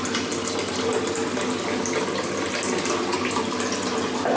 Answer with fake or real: real